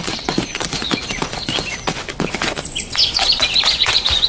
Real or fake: fake